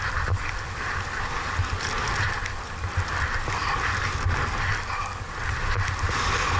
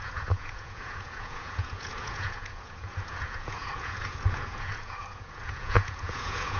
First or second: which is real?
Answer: first